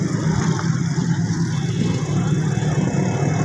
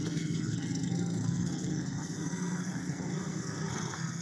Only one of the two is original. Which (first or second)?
first